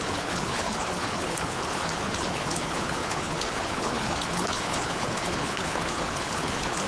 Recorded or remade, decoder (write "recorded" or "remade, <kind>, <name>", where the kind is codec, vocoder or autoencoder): remade, codec, HILCodec